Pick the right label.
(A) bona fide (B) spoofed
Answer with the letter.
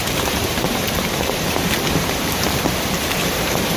B